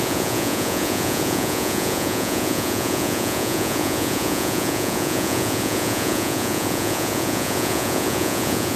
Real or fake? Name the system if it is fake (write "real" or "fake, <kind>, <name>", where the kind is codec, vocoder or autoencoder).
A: fake, vocoder, Vocos